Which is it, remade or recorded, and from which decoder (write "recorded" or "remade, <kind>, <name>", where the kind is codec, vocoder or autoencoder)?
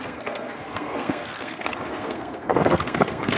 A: remade, codec, SNAC